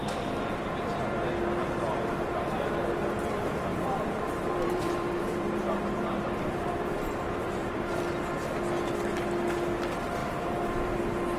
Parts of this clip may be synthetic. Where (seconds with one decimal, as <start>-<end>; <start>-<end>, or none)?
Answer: 3.7-8.0; 10.2-11.0